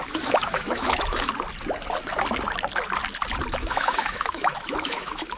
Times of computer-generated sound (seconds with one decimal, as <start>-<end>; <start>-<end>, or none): 0.0-1.3; 3.5-5.4